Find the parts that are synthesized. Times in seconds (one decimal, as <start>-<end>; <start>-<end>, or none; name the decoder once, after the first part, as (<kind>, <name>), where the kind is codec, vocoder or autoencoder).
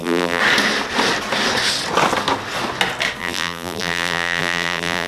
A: 0.0-0.4 (vocoder, BigVGAN v2); 3.2-5.1